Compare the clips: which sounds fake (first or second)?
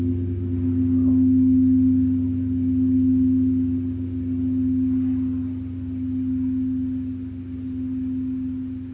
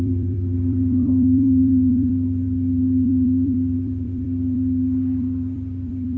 second